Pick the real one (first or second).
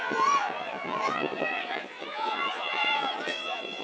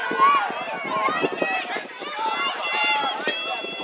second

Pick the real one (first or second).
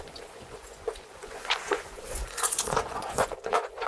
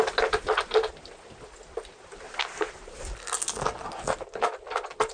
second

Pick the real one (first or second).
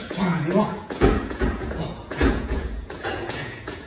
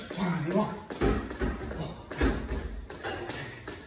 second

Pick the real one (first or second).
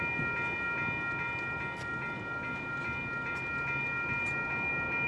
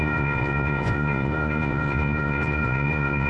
first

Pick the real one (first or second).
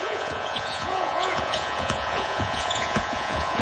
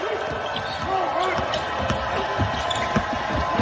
second